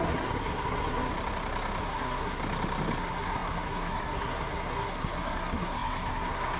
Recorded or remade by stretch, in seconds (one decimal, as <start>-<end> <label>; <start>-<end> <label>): 0.0-1.1 remade; 1.1-1.8 recorded; 1.8-2.4 remade; 2.4-3.0 recorded; 3.0-6.6 remade